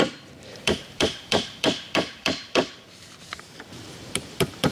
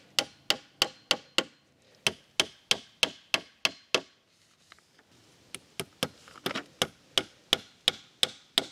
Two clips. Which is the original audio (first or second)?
second